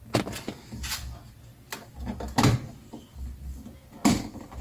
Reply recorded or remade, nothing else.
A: recorded